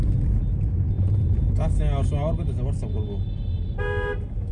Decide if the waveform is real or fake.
real